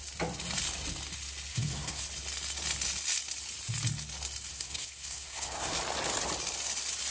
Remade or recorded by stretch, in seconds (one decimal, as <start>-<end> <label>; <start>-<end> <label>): 0.0-1.5 recorded; 1.5-2.0 remade; 2.0-4.5 recorded; 4.5-5.7 remade; 5.7-7.1 recorded